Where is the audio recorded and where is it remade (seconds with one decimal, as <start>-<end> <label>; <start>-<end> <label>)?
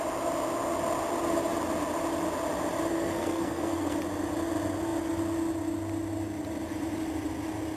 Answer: 0.0-2.9 recorded; 2.9-4.0 remade; 4.0-7.8 recorded